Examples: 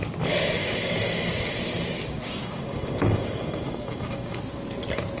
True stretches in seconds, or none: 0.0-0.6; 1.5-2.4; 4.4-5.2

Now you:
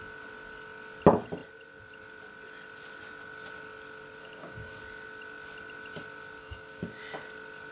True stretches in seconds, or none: 0.0-4.2; 4.8-6.4; 7.0-7.7

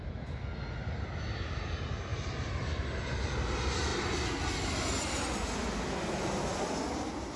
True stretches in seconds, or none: 0.0-7.4

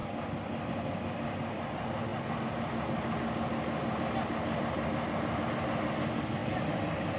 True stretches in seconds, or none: 0.0-7.2

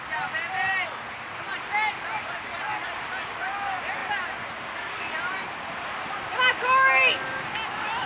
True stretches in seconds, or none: 0.0-8.1

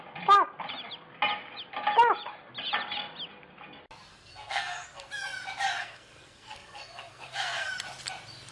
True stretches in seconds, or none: 0.0-4.1; 5.1-5.8; 7.7-8.5

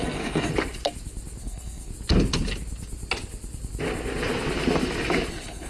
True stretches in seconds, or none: 0.5-1.4; 1.9-5.3